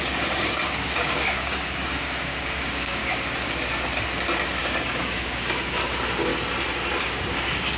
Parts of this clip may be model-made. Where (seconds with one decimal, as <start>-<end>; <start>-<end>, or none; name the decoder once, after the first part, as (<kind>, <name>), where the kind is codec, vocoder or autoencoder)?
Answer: 0.0-3.0 (codec, DAC); 4.6-6.3; 7.0-7.8